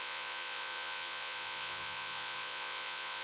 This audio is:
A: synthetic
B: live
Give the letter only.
A